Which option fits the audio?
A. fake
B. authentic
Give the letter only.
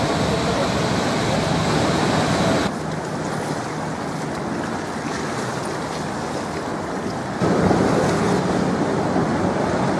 B